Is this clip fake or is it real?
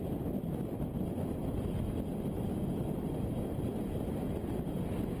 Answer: real